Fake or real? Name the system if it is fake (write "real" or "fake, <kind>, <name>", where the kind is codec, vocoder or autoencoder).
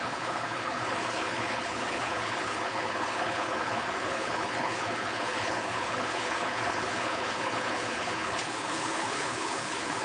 fake, codec, HILCodec